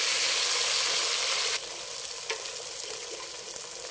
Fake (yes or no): no